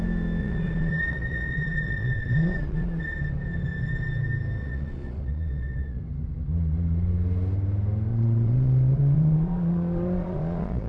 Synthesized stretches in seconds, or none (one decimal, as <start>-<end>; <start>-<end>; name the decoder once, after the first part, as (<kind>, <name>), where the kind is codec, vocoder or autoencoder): 0.4-3.0 (vocoder, Vocos); 4.6-6.0; 8.1-10.9